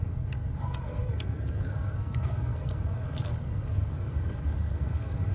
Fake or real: fake